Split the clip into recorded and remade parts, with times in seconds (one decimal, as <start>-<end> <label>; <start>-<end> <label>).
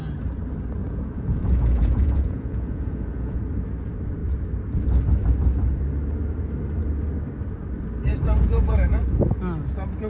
0.0-0.8 recorded; 0.8-3.4 remade; 3.4-8.1 recorded; 8.1-9.2 remade; 9.2-10.1 recorded